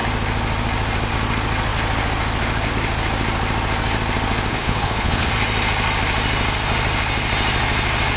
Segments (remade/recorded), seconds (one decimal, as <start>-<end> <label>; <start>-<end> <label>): 0.0-4.5 recorded; 4.5-5.3 remade; 5.3-8.2 recorded